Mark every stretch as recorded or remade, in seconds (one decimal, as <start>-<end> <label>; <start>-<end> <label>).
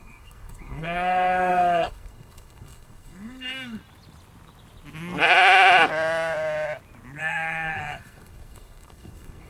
0.0-3.8 remade; 3.8-7.2 recorded; 7.2-9.5 remade